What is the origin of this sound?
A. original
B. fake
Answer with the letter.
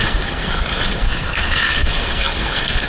B